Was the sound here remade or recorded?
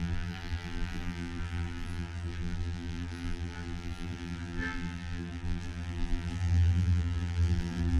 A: remade